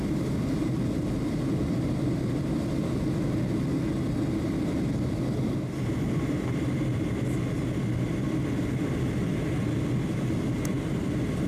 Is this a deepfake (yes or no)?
no